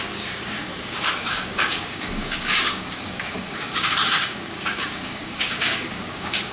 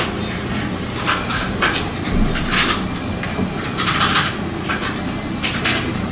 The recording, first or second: second